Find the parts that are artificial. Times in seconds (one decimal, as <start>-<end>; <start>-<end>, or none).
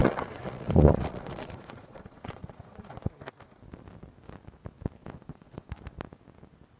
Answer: 0.0-3.1; 5.0-5.7